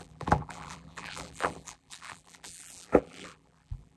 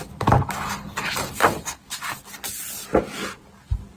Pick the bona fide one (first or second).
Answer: second